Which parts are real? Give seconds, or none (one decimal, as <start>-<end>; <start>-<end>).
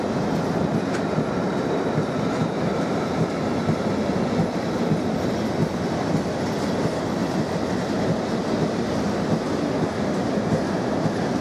0.0-2.4; 4.9-11.4